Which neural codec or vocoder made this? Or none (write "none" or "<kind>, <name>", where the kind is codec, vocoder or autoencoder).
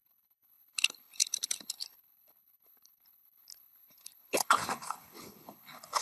codec, HILCodec